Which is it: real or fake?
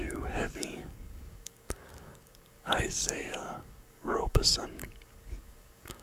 fake